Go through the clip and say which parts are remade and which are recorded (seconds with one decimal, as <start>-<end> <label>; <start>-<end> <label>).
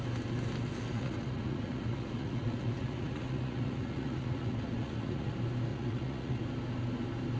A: 0.0-0.9 recorded; 0.9-5.3 remade; 5.3-5.7 recorded; 5.7-6.4 remade; 6.4-7.4 recorded